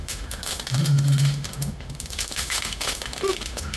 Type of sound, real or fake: fake